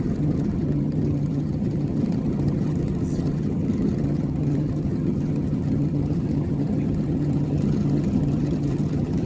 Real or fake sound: fake